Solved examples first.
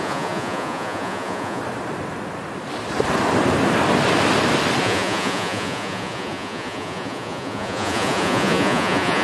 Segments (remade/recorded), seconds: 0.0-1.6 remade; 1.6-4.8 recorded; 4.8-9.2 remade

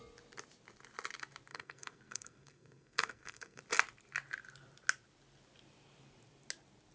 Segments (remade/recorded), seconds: 0.0-1.5 recorded; 1.5-3.6 remade; 3.6-6.9 recorded

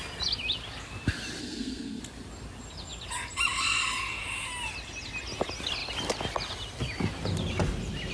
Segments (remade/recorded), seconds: 0.0-1.4 recorded; 1.4-2.0 remade; 2.0-8.1 recorded

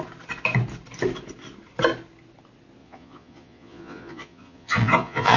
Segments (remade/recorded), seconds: 0.0-2.8 recorded; 2.8-5.4 remade

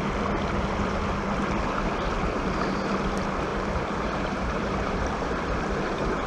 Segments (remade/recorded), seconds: 0.0-3.5 recorded; 3.5-6.3 remade

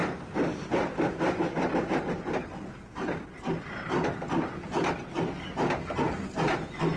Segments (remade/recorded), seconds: 0.0-7.0 recorded